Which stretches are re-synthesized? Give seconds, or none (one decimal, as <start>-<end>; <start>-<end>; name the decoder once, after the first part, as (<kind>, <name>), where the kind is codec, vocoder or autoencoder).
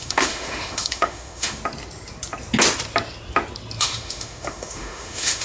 0.0-1.6 (autoencoder, DAC-VAE); 3.8-5.4